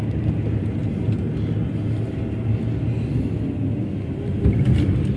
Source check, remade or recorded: recorded